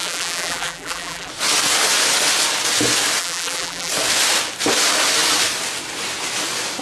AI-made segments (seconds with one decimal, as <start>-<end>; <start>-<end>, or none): 0.0-1.3; 3.2-3.9